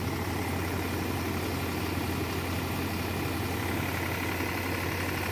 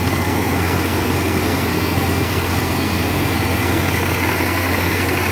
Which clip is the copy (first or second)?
second